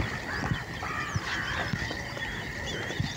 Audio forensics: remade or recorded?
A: recorded